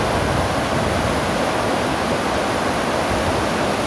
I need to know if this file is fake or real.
real